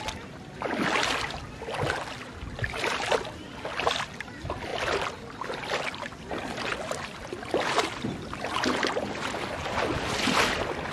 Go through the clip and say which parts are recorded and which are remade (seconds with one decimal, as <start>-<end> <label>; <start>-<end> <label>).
0.0-10.9 recorded